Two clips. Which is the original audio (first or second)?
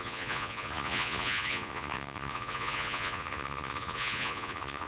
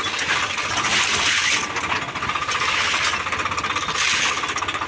second